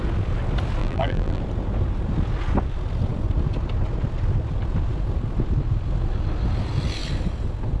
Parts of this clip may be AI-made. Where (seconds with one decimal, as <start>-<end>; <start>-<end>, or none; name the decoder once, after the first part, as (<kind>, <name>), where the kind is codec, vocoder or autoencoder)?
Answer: 0.8-1.4 (vocoder, BigVGAN v2)